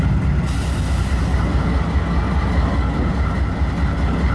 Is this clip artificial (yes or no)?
no